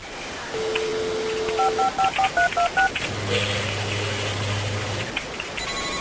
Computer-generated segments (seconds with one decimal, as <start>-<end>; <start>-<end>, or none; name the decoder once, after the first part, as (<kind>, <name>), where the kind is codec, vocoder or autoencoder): none